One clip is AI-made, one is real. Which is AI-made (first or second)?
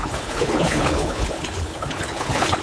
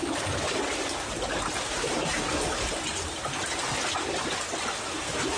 first